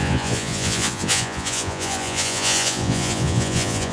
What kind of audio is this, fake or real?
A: fake